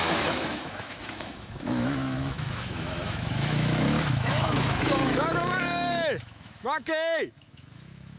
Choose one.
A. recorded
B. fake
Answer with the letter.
B